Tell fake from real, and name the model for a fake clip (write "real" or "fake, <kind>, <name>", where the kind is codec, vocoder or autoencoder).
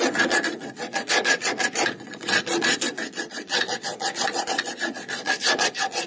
fake, vocoder, Vocos